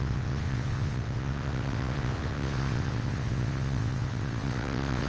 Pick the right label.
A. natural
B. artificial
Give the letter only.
B